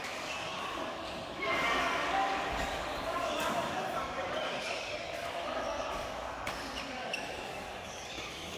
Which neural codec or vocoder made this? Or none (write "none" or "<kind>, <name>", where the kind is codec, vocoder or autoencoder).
codec, DAC